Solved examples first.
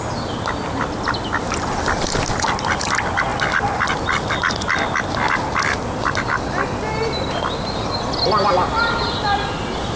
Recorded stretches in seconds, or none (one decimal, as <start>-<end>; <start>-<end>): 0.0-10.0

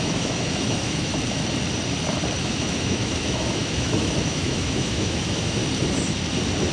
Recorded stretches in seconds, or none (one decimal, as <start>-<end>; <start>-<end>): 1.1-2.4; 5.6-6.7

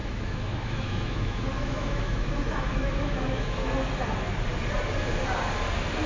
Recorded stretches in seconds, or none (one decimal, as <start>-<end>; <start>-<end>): 3.7-6.1

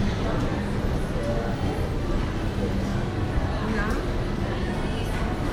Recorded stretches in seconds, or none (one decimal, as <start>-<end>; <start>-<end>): 0.0-5.5

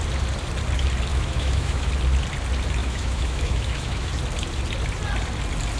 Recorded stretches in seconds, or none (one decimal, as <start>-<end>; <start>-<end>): 0.0-1.1; 1.9-2.8; 4.1-5.8

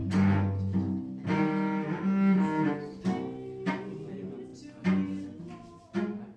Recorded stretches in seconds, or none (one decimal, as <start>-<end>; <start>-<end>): 0.0-6.4

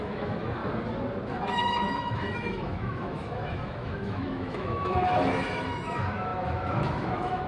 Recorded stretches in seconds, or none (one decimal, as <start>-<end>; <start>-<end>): 0.6-1.4

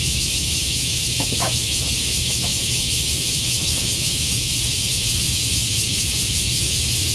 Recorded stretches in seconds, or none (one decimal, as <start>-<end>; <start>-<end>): none